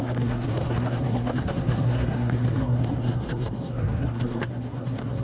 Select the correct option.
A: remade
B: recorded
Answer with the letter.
A